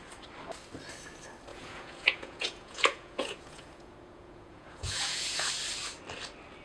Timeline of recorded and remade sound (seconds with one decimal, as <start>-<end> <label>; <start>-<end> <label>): 0.0-1.5 recorded; 1.5-5.5 remade; 5.5-6.6 recorded